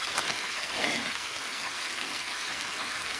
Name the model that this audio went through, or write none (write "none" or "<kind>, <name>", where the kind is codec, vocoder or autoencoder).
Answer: codec, SNAC